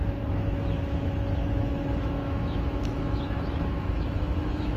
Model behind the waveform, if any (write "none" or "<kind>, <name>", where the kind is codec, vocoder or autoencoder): autoencoder, DAC-VAE